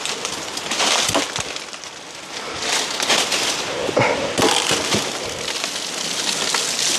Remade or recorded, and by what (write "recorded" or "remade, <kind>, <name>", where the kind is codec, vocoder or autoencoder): recorded